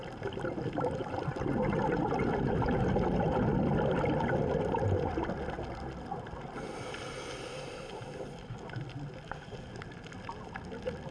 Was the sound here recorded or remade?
recorded